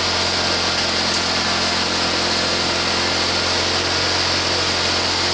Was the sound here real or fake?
real